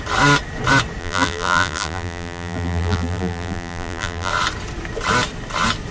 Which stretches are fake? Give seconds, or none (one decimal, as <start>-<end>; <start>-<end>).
1.0-4.3